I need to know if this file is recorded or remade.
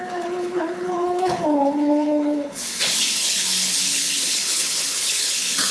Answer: remade